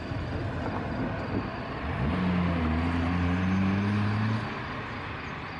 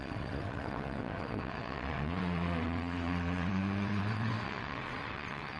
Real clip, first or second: first